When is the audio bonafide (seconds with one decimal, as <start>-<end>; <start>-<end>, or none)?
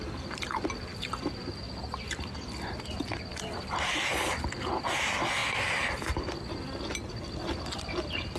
0.0-8.4